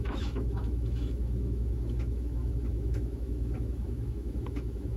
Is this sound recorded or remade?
remade